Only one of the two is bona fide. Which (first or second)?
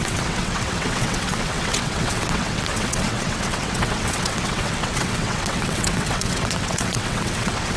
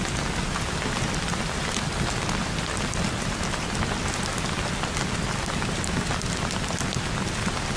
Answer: second